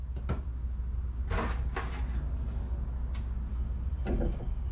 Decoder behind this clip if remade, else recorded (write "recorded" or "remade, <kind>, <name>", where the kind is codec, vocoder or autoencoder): recorded